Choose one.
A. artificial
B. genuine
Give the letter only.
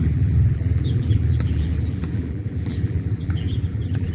A